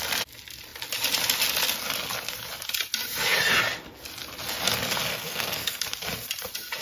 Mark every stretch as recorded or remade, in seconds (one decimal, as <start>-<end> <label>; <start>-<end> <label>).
0.0-5.1 recorded; 5.1-5.8 remade; 5.8-6.8 recorded